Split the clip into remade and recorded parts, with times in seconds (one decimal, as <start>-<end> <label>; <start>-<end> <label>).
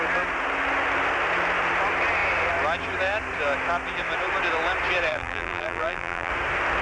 0.0-5.1 recorded; 5.1-6.3 remade; 6.3-6.8 recorded